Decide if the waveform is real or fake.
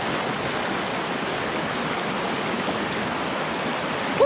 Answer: real